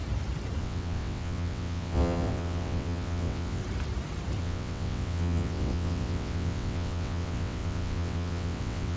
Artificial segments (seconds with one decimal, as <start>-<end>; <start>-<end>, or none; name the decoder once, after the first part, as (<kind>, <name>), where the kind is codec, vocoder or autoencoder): 0.6-3.6 (vocoder, WaveNeXt); 4.4-9.0